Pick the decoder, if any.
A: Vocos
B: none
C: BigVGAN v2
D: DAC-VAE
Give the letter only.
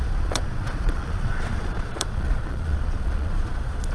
A